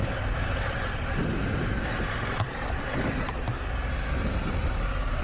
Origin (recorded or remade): remade